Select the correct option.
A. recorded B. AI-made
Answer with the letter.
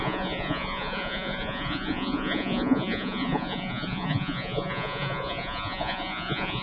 B